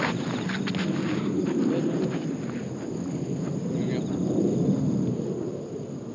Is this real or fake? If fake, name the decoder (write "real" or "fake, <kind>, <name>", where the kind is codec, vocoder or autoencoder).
real